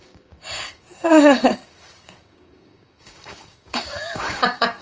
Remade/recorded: remade